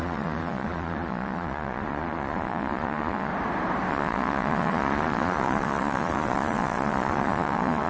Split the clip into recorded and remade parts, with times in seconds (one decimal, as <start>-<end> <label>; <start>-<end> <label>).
0.0-3.3 remade; 3.3-3.9 recorded; 3.9-7.9 remade